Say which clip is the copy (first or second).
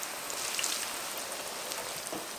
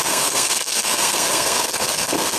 second